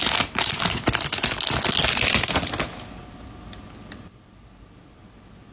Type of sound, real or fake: real